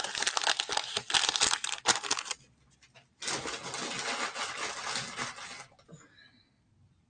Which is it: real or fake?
real